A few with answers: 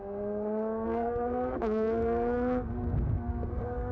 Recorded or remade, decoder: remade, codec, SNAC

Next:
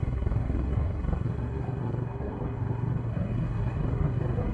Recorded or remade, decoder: remade, codec, SNAC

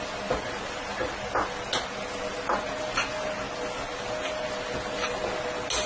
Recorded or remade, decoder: recorded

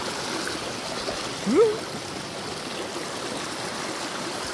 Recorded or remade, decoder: recorded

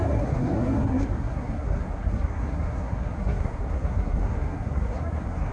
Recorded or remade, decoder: remade, codec, SNAC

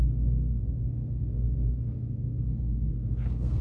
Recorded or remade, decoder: remade, codec, SNAC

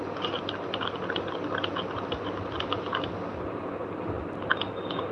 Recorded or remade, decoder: recorded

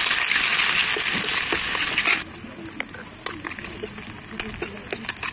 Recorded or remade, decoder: recorded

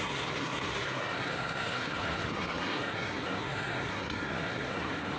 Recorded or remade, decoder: remade, codec, SNAC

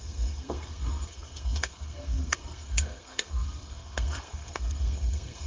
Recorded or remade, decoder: remade, codec, SNAC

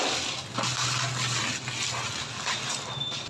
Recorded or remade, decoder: recorded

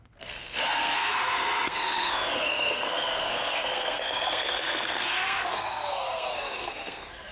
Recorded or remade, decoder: remade, codec, SNAC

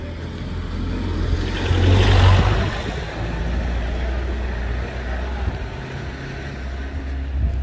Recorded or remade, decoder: recorded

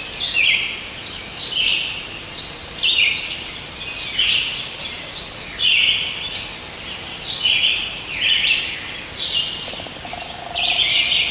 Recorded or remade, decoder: recorded